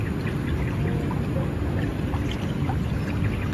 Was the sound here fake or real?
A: real